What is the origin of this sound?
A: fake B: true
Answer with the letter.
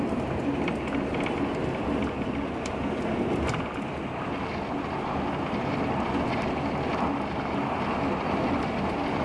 B